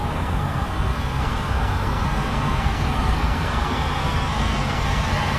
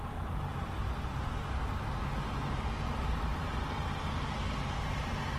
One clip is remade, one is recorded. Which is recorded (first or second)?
second